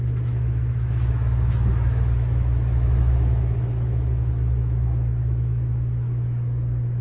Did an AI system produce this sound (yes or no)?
yes